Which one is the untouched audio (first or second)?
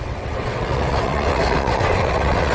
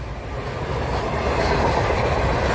second